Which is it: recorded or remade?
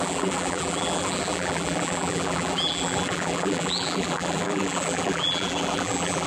remade